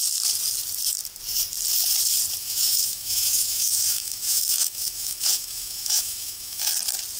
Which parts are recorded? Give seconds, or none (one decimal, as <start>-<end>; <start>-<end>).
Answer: 0.0-2.4; 6.7-7.2